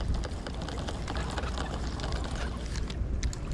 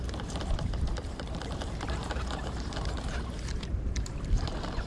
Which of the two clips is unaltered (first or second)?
first